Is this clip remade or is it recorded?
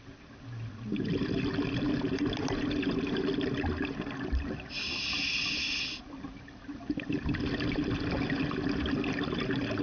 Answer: recorded